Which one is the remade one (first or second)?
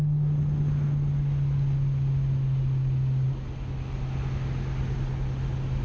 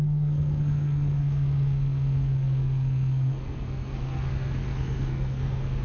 second